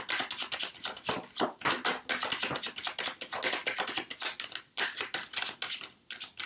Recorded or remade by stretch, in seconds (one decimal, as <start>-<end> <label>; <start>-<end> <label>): 0.0-6.5 recorded

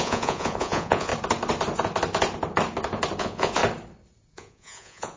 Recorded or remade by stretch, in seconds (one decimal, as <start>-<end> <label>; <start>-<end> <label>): 0.0-1.1 remade; 1.1-3.2 recorded; 3.2-3.6 remade; 3.6-4.3 recorded; 4.3-5.2 remade

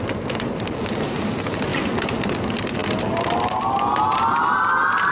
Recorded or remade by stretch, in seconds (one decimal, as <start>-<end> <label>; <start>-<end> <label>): 0.0-5.1 recorded

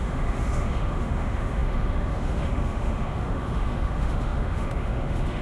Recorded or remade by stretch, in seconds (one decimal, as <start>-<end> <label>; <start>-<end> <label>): 0.0-5.4 remade

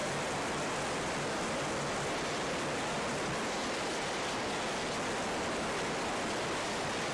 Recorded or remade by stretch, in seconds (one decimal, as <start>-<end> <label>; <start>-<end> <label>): 0.0-7.1 recorded